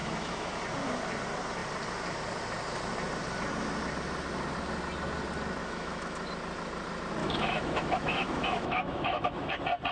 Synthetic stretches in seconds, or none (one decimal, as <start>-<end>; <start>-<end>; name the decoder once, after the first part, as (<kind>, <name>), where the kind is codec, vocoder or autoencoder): 0.0-0.6 (autoencoder, DAC-VAE); 5.6-6.3; 7.2-9.5